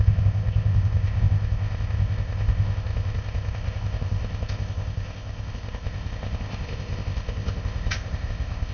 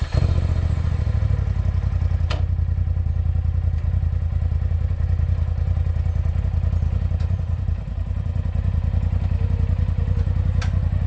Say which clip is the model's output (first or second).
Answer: first